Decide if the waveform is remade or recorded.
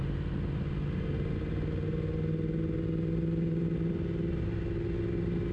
recorded